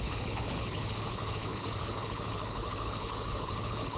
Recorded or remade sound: remade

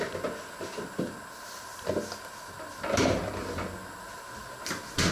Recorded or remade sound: recorded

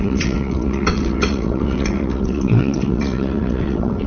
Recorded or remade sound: remade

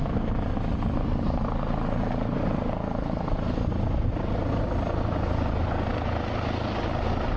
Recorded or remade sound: recorded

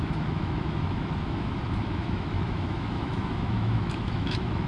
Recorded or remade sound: remade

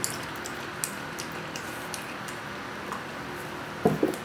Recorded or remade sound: recorded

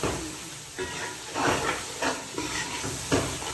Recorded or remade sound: recorded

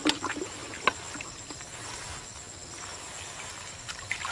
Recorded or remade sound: recorded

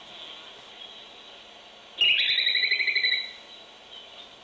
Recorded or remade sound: recorded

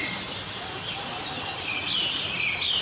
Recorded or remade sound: recorded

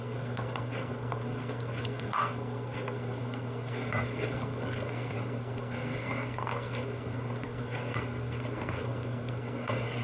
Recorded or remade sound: remade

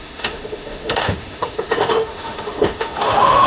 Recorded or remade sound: remade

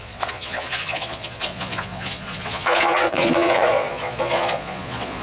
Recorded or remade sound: remade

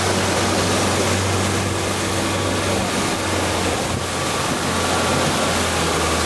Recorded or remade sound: recorded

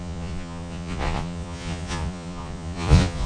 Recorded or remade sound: remade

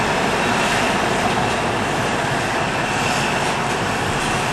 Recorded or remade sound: remade